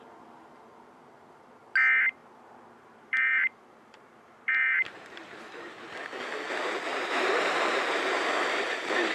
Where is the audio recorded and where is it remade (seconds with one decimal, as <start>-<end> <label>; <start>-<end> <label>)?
0.0-2.2 recorded; 2.2-5.9 remade; 5.9-6.9 recorded; 6.9-9.1 remade